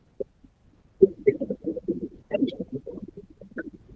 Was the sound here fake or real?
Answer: real